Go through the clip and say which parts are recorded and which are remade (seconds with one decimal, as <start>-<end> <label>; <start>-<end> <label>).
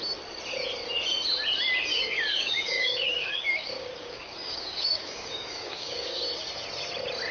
0.0-1.9 recorded; 1.9-6.2 remade; 6.2-7.3 recorded